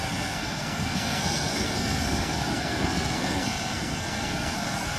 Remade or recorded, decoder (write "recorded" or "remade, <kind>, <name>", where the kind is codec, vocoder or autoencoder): remade, codec, SNAC